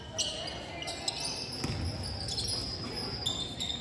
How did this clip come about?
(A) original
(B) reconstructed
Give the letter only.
A